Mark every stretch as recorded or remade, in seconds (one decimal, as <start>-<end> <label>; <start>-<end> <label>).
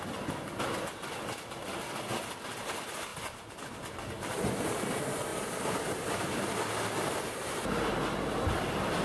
0.0-9.0 recorded